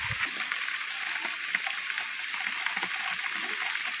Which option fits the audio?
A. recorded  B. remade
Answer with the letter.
A